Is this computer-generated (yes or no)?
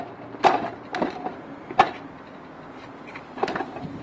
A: no